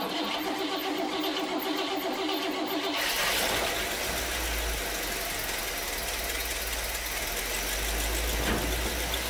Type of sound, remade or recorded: recorded